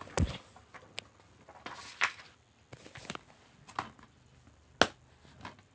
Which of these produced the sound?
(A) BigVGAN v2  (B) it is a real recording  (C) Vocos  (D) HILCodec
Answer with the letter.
B